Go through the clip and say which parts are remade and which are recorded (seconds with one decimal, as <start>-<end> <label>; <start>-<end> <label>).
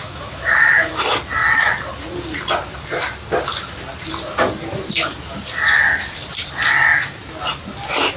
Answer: 0.0-0.9 remade; 0.9-8.2 recorded